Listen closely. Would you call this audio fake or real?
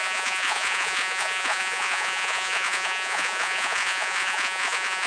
fake